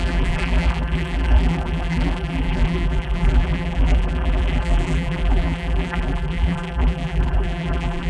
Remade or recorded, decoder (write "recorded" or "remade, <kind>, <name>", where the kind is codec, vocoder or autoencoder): remade, vocoder, BigVGAN v2